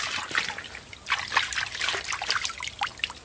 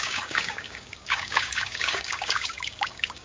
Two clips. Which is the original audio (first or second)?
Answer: first